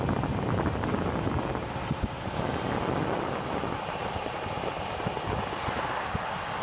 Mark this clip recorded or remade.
recorded